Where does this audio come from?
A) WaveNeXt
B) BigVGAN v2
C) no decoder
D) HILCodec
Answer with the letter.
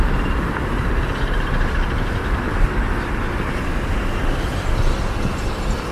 C